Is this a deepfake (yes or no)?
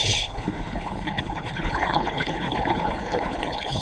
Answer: yes